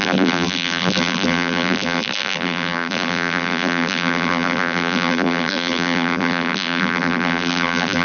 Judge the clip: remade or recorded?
remade